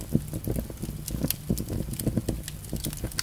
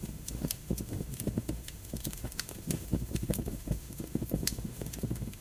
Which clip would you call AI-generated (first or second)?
second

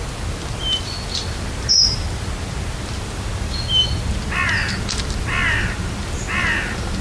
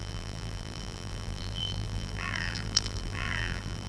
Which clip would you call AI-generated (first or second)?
second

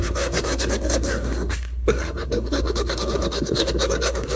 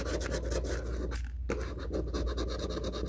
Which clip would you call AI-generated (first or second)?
first